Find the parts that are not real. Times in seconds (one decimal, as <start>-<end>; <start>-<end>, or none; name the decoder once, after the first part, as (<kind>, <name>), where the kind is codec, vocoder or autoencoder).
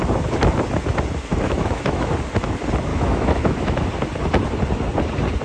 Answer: 1.3-2.1 (autoencoder, DAC-VAE); 2.9-3.8